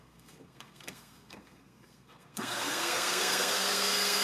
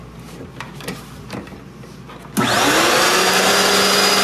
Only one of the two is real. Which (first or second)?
second